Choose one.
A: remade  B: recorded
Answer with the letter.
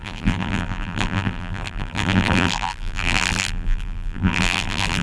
A